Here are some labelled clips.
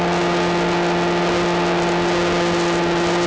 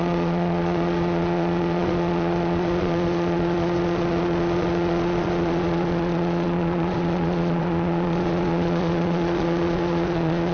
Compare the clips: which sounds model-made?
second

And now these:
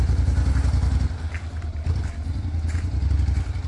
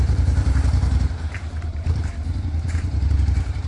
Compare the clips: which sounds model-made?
second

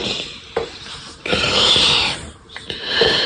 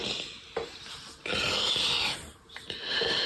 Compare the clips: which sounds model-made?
first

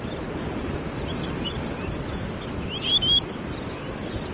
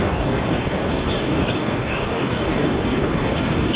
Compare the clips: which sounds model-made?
second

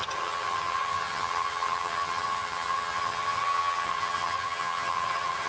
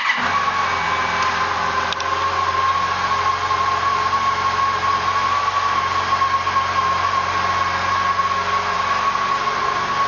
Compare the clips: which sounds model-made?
first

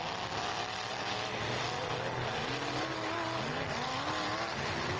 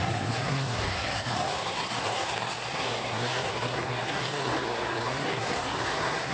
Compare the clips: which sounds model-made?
second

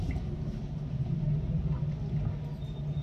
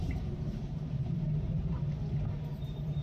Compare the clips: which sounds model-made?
second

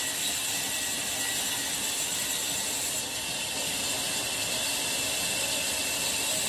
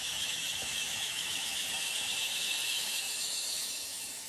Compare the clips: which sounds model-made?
second